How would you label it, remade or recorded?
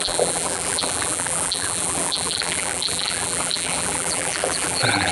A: remade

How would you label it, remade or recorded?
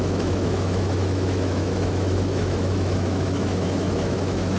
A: remade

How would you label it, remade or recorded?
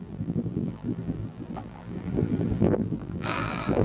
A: remade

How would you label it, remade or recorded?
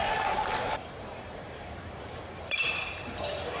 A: remade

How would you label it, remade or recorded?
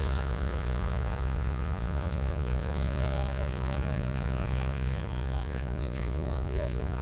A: remade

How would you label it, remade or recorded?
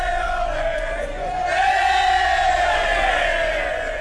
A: remade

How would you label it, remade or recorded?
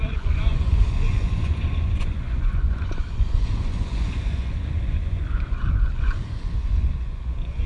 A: remade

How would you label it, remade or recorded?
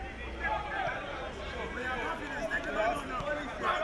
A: recorded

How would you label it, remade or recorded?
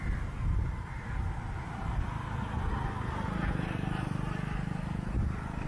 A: recorded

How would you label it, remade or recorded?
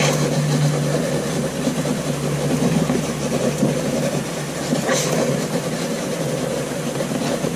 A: recorded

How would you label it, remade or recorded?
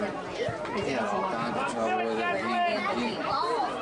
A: recorded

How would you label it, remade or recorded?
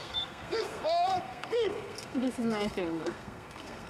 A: remade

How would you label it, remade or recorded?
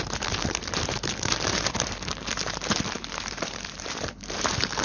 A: remade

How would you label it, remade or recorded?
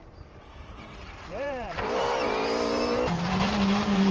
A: remade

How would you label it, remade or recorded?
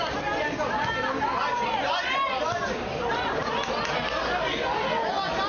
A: recorded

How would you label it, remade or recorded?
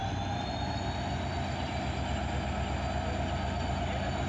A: recorded